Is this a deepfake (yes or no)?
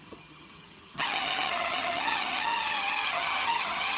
yes